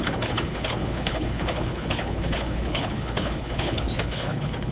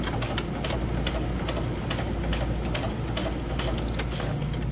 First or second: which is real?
second